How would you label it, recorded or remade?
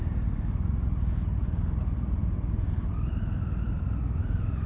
recorded